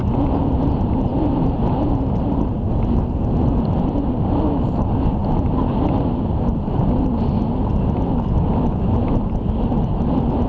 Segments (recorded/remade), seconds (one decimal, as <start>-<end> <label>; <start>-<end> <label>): 0.0-10.5 recorded